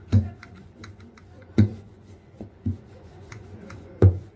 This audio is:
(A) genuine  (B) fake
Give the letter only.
B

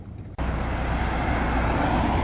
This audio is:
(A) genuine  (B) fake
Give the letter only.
A